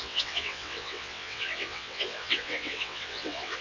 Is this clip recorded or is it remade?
remade